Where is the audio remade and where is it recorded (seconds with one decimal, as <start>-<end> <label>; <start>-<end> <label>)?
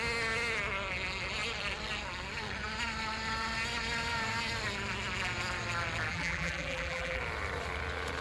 0.0-6.1 recorded; 6.1-7.2 remade; 7.2-8.2 recorded